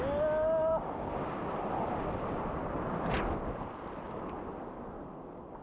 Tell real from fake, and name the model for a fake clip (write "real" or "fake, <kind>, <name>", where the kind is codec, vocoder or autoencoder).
real